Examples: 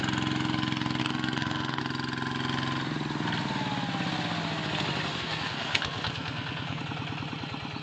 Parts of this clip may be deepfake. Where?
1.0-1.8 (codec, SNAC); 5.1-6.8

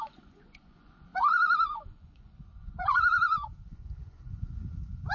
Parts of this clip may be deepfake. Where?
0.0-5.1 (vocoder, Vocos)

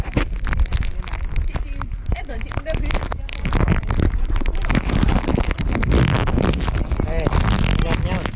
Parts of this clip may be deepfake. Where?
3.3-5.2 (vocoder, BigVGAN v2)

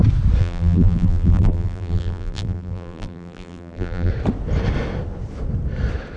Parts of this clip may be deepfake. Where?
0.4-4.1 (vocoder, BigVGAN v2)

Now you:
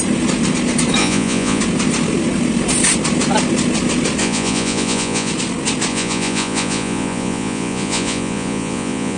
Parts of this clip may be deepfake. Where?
1.0-1.6 (vocoder, Vocos); 4.2-5.3; 5.9-9.2

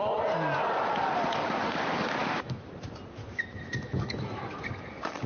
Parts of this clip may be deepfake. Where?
2.2-2.7 (autoencoder, DAC-VAE); 3.2-4.6

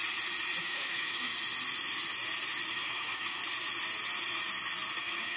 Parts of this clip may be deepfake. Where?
0.6-1.3 (autoencoder, DAC-VAE); 2.7-3.4; 5.0-5.4